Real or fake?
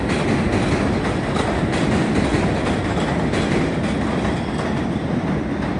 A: real